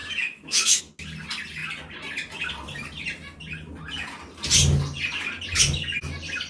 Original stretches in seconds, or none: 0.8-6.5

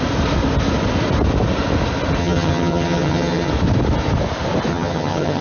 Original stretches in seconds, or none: 0.0-2.2; 3.5-4.7

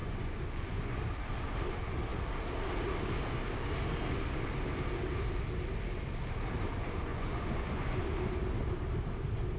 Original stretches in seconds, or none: 1.0-7.1; 8.0-9.6

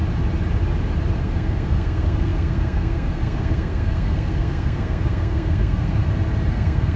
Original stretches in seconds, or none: 0.0-1.2; 6.0-6.5

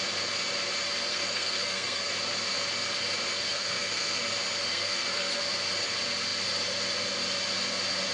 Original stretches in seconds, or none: 0.0-1.1; 2.1-3.5; 4.2-4.7; 5.4-8.1